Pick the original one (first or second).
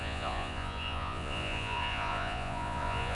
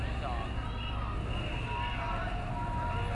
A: second